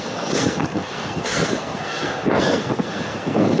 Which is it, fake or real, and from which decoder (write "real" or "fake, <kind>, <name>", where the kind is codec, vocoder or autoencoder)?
fake, codec, SNAC